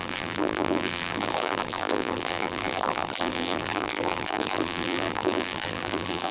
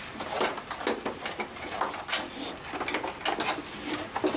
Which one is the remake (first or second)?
first